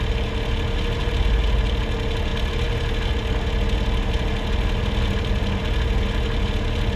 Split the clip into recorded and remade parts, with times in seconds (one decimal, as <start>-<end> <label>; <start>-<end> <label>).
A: 0.0-7.0 recorded